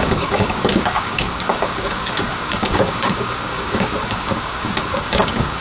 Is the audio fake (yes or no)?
yes